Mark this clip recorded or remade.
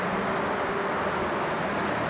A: recorded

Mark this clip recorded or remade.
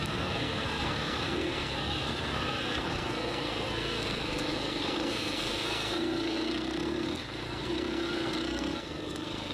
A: remade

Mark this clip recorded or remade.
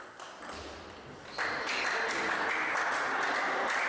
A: recorded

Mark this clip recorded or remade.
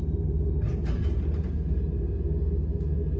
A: recorded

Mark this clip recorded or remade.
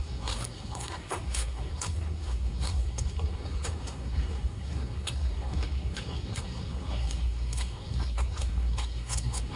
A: remade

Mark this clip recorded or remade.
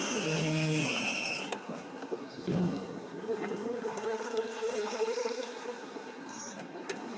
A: remade